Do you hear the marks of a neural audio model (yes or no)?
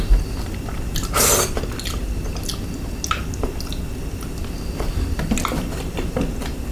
no